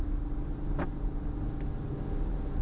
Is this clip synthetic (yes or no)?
no